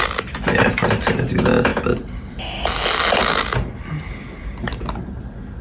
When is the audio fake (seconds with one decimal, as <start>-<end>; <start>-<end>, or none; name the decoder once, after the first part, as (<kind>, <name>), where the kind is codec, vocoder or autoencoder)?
none